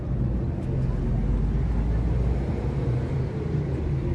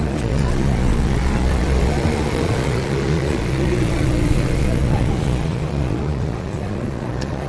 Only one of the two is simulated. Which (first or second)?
second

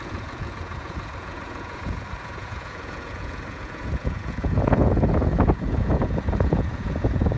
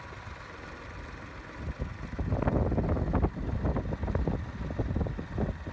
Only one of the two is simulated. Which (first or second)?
first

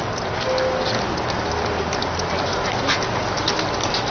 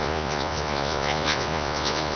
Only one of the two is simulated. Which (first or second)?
second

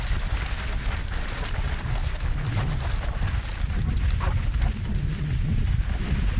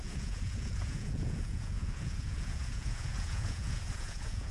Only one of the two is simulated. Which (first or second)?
second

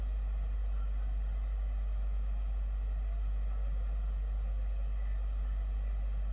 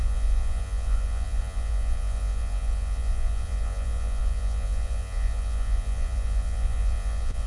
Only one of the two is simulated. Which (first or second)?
second